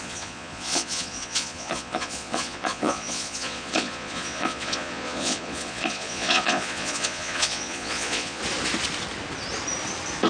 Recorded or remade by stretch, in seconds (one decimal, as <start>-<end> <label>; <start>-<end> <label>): 0.0-8.4 remade; 8.4-10.3 recorded